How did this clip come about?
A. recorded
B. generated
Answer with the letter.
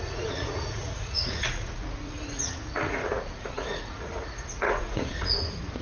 B